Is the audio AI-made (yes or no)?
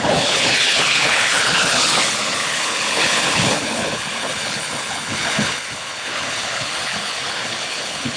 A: yes